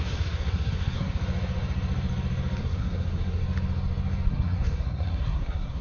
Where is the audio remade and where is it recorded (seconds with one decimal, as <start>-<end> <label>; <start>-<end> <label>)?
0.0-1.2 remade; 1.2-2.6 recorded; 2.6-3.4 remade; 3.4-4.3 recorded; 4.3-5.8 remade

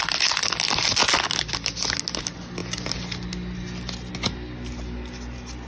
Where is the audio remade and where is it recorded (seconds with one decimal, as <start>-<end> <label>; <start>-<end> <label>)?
0.0-5.7 recorded

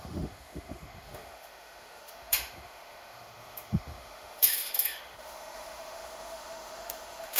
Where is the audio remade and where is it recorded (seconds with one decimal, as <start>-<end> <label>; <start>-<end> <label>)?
0.0-7.4 remade